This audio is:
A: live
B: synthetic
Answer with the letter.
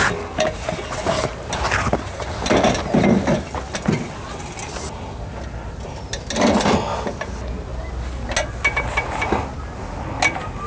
A